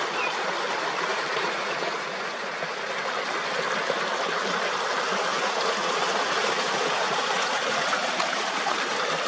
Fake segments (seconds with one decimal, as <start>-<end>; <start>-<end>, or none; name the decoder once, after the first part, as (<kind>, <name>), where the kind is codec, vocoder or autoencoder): 1.1-2.9 (vocoder, Vocos); 5.3-8.6